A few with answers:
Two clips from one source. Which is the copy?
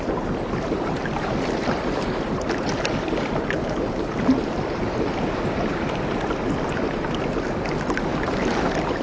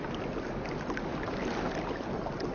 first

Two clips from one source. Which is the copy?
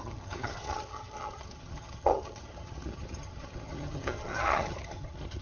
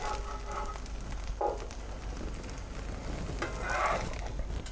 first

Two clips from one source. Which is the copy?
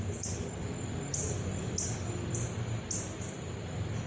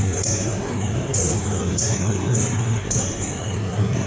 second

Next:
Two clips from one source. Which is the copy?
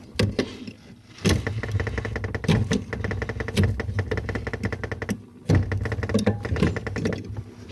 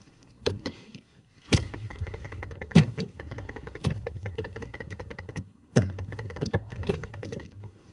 second